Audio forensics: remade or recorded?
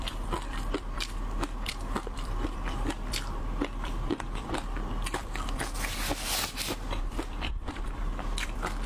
remade